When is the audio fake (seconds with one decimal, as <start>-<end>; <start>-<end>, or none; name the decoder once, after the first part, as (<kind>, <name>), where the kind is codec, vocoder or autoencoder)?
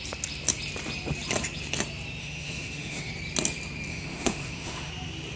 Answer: 2.2-3.1 (autoencoder, DAC-VAE); 3.9-4.9